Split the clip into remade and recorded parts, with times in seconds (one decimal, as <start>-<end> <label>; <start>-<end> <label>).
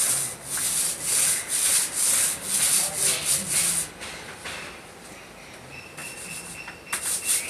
0.0-7.5 recorded